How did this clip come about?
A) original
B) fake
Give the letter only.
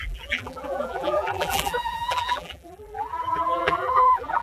B